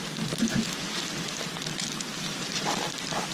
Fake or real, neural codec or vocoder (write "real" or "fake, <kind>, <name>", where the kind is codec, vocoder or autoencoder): fake, vocoder, BigVGAN v2